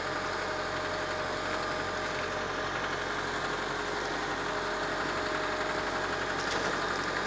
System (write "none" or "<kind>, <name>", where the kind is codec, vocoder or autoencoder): none